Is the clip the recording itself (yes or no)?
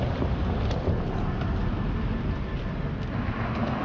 yes